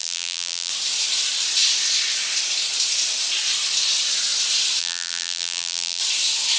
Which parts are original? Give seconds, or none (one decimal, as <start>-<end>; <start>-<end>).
0.7-4.8; 6.0-6.6